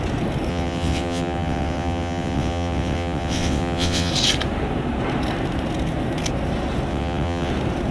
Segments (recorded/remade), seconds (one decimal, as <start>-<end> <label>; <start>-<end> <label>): 0.0-0.5 recorded; 0.5-4.1 remade; 4.1-6.9 recorded; 6.9-7.5 remade; 7.5-7.9 recorded